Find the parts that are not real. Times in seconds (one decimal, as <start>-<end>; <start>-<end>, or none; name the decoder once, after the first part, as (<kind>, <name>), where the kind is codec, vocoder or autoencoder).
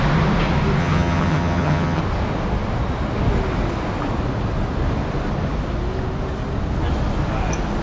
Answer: 0.8-2.0 (vocoder, HiFi-GAN)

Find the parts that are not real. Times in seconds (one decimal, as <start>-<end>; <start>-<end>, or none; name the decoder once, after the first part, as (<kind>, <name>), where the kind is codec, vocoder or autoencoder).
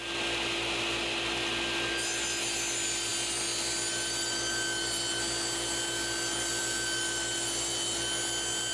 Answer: none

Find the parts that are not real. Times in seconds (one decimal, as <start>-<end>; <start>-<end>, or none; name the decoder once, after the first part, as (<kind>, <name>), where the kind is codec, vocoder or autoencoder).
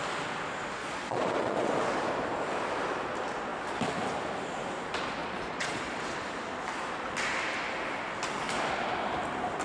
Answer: 0.8-1.7 (vocoder, Vocos); 5.2-6.0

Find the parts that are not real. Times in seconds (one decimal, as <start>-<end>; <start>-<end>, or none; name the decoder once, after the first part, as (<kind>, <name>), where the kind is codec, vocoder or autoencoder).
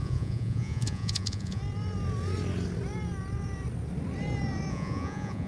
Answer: 0.0-1.6 (vocoder, Vocos); 4.7-5.5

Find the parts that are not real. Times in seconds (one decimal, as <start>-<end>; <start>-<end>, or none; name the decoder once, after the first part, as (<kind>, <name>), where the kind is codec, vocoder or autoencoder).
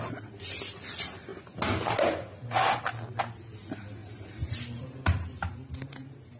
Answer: 4.0-6.4 (vocoder, BigVGAN v2)